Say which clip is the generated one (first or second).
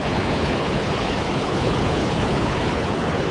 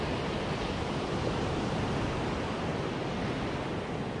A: first